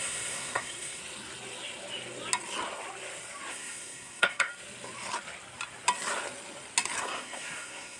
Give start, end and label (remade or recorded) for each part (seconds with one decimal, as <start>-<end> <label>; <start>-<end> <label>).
0.0-1.0 remade; 1.0-3.5 recorded; 3.5-4.5 remade; 4.5-7.0 recorded; 7.0-8.0 remade